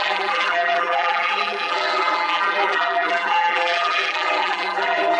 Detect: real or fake fake